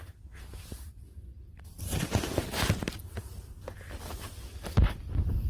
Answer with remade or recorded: recorded